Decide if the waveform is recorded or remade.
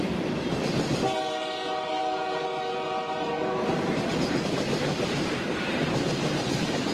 remade